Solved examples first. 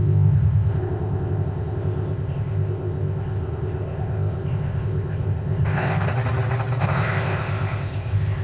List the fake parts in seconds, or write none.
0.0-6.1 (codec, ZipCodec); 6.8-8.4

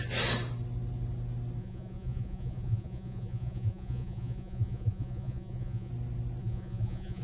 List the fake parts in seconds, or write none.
1.6-5.9 (vocoder, Vocos); 6.4-7.2

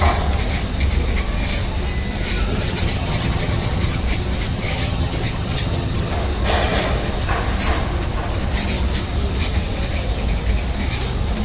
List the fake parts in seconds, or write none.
2.5-4.0 (vocoder, HiFi-GAN); 4.5-6.1